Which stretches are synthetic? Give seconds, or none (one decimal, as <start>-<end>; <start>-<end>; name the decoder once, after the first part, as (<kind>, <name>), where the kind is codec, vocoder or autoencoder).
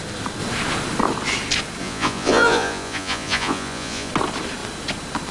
1.8-4.1 (vocoder, Vocos)